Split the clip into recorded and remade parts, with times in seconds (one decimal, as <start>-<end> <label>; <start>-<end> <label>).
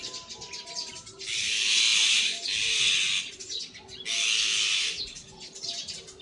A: 0.0-6.2 recorded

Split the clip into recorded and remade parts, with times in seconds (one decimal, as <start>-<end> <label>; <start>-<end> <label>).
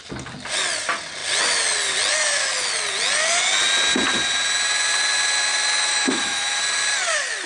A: 0.0-5.9 recorded; 5.9-6.6 remade; 6.6-7.5 recorded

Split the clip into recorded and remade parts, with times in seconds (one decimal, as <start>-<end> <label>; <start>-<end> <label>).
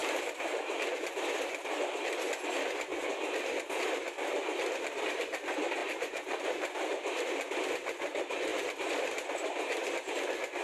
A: 0.0-1.0 remade; 1.0-5.8 recorded; 5.8-7.2 remade; 7.2-10.6 recorded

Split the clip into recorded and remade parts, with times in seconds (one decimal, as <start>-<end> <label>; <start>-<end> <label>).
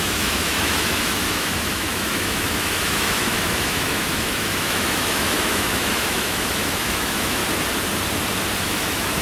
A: 0.0-7.4 remade; 7.4-8.6 recorded; 8.6-9.2 remade